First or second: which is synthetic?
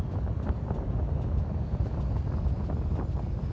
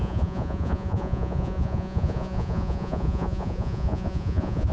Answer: second